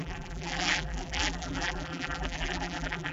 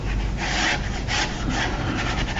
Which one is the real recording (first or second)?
second